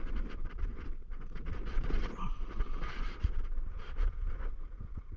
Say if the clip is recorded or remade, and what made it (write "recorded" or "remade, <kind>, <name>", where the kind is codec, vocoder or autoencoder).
remade, vocoder, Vocos